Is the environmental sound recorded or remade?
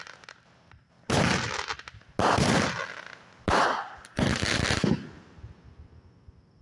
recorded